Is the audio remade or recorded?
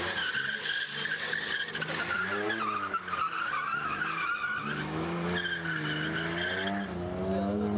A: recorded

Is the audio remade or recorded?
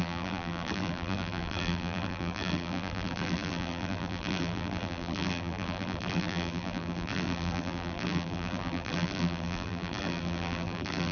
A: remade